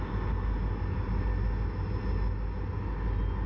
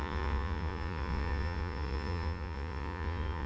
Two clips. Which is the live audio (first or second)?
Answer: first